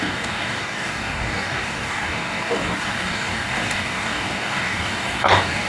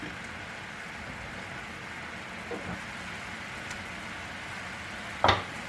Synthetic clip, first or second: first